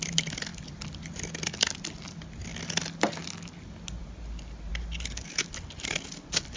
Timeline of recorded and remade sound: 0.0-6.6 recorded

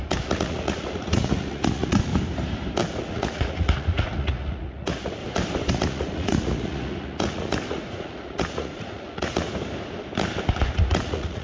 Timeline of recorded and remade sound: 0.0-2.1 remade; 2.1-3.0 recorded; 3.0-5.2 remade; 5.2-5.7 recorded; 5.7-9.3 remade; 9.3-10.9 recorded; 10.9-11.4 remade

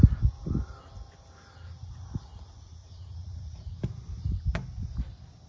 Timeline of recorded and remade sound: 0.0-2.8 recorded; 2.8-3.7 remade; 3.7-5.5 recorded

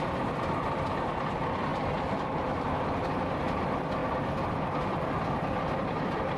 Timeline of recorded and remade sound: 0.0-1.7 recorded; 1.7-2.5 remade; 2.5-6.4 recorded